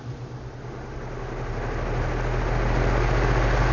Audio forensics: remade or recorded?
recorded